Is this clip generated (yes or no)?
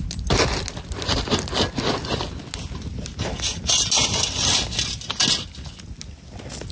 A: no